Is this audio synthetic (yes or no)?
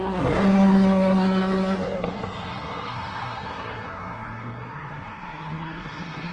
yes